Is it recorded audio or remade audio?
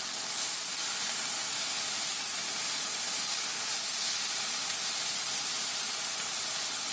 remade